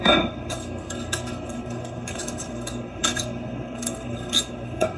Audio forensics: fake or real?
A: fake